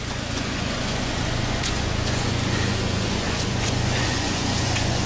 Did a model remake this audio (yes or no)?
yes